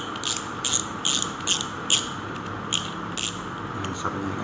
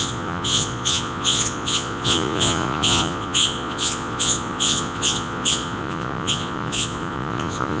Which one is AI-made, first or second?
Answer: second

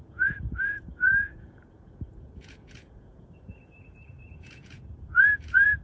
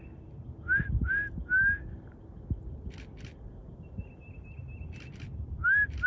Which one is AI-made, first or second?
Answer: first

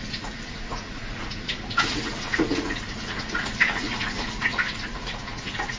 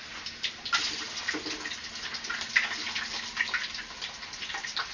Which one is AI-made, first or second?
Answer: first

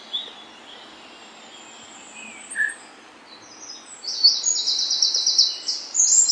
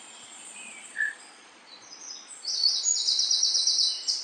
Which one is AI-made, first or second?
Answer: second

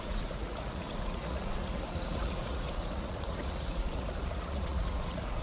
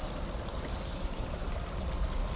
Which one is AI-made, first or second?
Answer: first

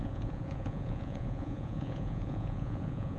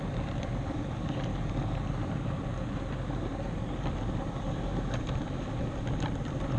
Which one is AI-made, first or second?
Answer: first